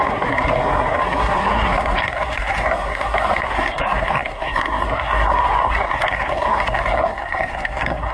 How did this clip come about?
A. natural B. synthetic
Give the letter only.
B